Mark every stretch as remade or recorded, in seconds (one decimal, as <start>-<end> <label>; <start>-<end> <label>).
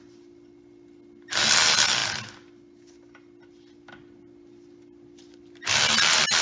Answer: 0.0-6.4 recorded